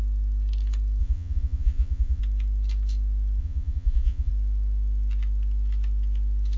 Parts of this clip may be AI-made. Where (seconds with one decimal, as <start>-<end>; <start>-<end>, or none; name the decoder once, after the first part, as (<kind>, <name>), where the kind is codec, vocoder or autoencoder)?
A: 1.0-2.2 (vocoder, Vocos); 3.4-4.3